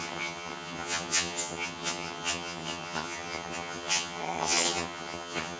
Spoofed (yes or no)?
yes